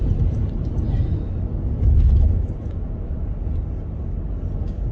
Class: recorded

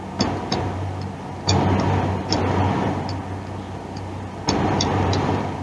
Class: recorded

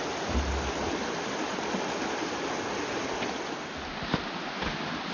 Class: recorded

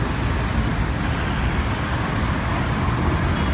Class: recorded